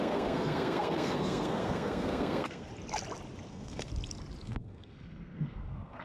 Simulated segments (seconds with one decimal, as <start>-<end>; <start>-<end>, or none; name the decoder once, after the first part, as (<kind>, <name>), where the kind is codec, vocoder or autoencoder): 0.0-2.7 (codec, SNAC); 3.5-3.9; 4.5-6.0